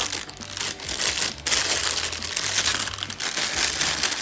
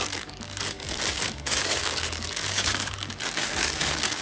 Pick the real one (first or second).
first